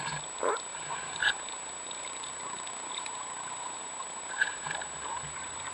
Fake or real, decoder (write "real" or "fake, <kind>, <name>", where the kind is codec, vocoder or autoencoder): real